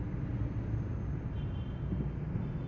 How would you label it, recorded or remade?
recorded